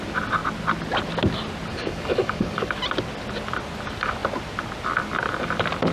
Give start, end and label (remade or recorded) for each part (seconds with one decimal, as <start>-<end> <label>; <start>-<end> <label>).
0.0-1.7 recorded; 1.7-2.7 remade; 2.7-5.9 recorded